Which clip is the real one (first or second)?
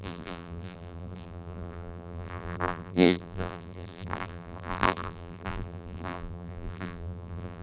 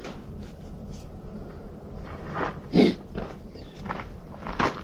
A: second